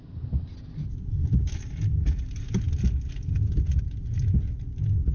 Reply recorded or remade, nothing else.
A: recorded